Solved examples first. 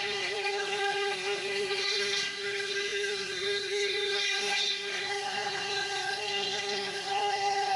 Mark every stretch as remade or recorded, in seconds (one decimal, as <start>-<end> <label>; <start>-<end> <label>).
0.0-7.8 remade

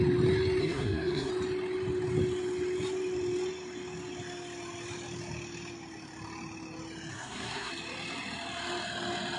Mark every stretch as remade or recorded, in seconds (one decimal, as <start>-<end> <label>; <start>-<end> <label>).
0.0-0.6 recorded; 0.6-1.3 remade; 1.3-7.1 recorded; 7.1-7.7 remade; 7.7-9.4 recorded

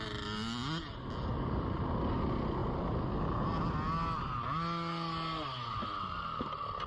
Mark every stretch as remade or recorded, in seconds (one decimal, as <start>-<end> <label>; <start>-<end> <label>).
0.0-6.9 recorded

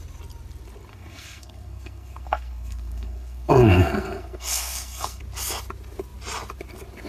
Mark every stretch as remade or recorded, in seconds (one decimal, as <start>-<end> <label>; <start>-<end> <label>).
0.0-0.9 recorded; 0.9-5.2 remade; 5.2-7.1 recorded

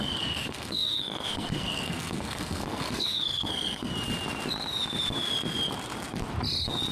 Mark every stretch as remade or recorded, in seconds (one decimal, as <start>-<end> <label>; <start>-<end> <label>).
0.0-3.9 remade; 3.9-6.9 recorded

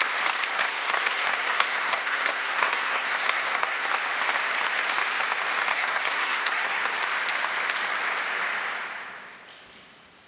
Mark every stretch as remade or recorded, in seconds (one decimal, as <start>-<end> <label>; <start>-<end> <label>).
0.0-0.5 recorded; 0.5-3.9 remade; 3.9-5.7 recorded; 5.7-6.8 remade; 6.8-10.3 recorded